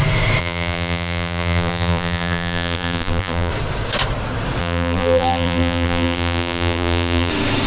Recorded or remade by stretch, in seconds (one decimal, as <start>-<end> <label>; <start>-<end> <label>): 0.0-0.4 recorded; 0.4-3.5 remade; 3.5-4.6 recorded; 4.6-7.3 remade; 7.3-7.7 recorded